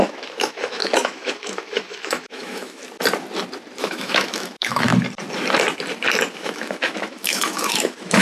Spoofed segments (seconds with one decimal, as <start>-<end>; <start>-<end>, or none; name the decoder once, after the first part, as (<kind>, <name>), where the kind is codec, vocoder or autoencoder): 0.0-2.8 (autoencoder, DAC-VAE); 3.8-4.9; 6.3-8.2

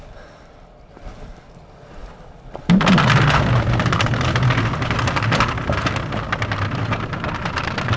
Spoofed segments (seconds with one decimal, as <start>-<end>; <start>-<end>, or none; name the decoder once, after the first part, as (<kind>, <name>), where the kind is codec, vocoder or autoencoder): none

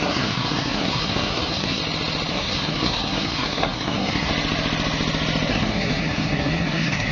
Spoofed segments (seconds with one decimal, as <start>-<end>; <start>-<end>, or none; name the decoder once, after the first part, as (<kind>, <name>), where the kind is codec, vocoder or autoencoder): 0.0-1.8 (codec, SNAC); 2.3-4.3; 5.5-7.1

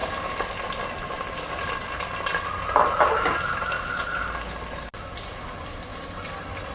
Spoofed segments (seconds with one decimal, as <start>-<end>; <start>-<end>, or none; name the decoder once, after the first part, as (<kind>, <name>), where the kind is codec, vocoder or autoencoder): none